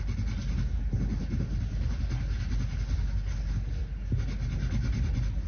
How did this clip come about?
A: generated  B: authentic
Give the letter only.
B